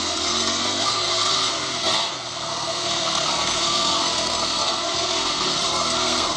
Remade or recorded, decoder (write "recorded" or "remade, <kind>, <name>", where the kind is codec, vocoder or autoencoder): remade, codec, SNAC